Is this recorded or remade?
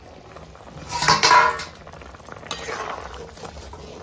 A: recorded